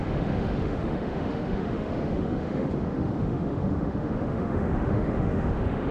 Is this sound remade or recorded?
remade